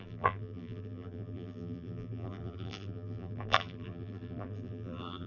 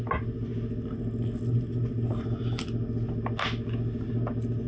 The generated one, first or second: first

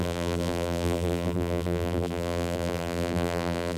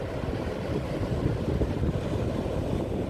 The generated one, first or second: first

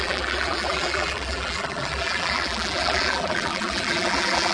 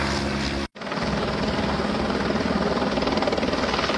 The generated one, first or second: first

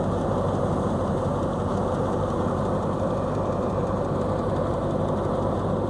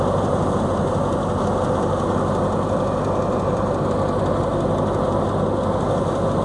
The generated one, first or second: first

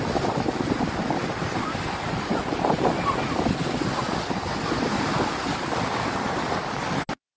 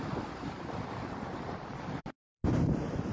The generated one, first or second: second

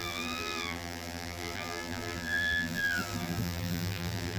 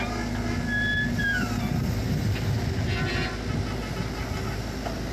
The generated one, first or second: first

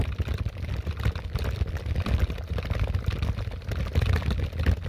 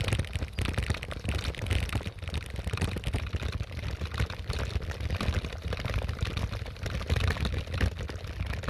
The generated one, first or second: second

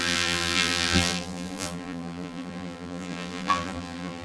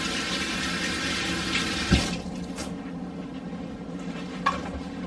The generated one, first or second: first